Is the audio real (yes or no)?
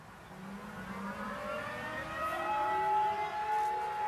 yes